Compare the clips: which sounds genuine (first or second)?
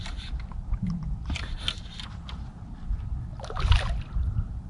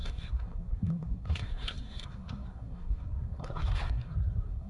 first